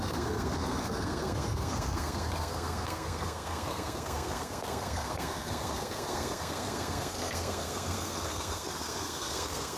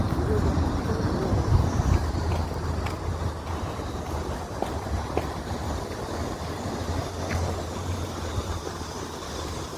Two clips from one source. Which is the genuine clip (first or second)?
second